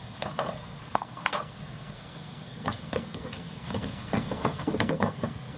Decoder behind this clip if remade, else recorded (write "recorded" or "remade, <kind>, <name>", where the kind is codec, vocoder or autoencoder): remade, codec, SNAC